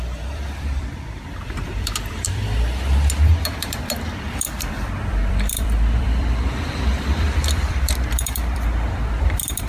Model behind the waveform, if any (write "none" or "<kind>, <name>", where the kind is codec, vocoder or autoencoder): vocoder, BigVGAN v2